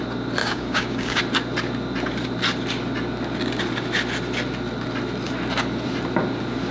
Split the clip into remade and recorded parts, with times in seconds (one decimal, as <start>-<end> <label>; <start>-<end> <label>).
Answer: 0.0-0.4 recorded; 0.4-1.2 remade; 1.2-6.7 recorded